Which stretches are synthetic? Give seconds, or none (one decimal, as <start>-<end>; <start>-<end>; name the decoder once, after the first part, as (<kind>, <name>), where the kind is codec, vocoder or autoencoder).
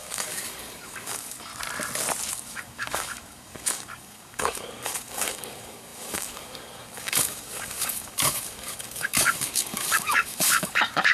0.0-1.5 (codec, DAC); 2.3-11.1